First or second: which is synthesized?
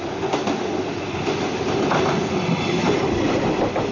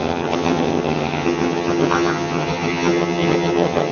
second